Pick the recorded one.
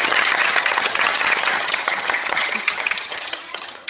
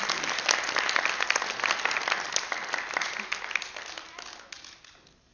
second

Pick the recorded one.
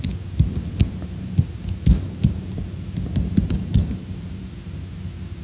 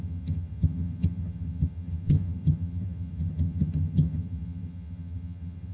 first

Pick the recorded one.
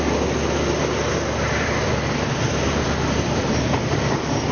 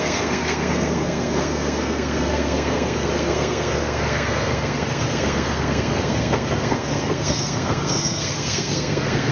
first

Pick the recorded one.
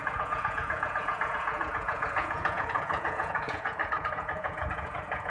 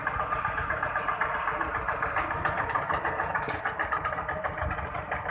second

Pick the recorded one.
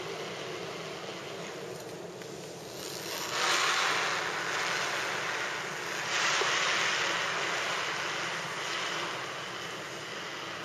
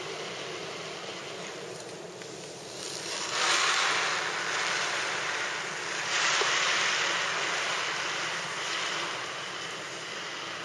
first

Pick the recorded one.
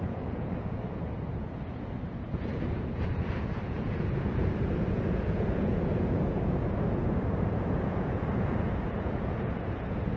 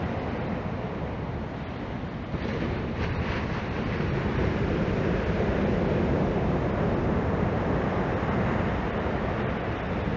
second